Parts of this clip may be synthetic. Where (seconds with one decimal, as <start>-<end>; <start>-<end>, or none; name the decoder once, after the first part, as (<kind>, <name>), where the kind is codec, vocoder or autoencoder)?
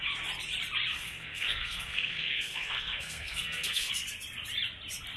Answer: 0.9-3.9 (codec, SNAC)